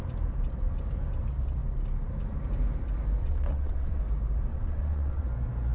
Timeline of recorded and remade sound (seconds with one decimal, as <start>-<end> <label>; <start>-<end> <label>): 0.0-3.2 recorded; 3.2-4.0 remade; 4.0-4.5 recorded; 4.5-5.2 remade; 5.2-5.7 recorded